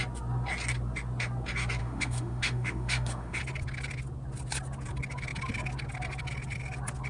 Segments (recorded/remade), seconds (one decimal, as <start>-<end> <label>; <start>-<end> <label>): 0.0-1.8 recorded; 1.8-3.4 remade; 3.4-7.1 recorded